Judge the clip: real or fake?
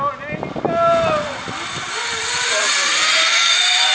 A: real